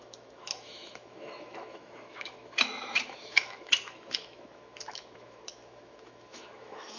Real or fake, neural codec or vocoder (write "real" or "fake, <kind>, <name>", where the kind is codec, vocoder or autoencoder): fake, autoencoder, DAC-VAE